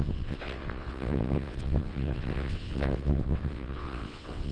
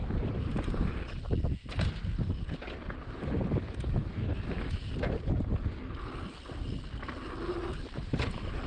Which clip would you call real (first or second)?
second